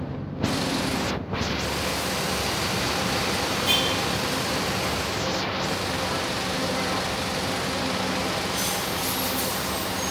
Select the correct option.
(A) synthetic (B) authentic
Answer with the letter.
B